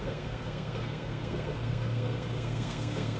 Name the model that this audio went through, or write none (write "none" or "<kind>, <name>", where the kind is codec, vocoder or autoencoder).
codec, SNAC